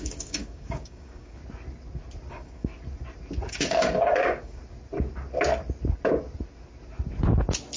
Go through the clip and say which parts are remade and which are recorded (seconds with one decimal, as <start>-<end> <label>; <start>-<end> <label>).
0.0-1.4 remade; 1.4-2.3 recorded; 2.3-2.7 remade; 2.7-3.5 recorded; 3.5-4.6 remade; 4.6-7.8 recorded